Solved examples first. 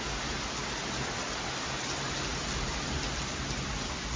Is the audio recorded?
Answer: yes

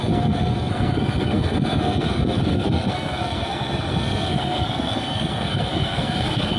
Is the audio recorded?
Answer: no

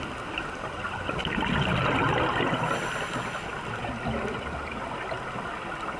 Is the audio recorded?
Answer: yes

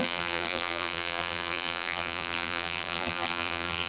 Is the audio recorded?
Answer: no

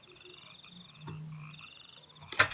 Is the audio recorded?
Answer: yes